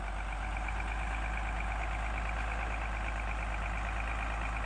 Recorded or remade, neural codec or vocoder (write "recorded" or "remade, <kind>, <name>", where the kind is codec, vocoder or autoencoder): recorded